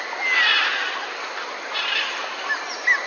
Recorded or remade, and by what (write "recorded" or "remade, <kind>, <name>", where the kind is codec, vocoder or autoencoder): recorded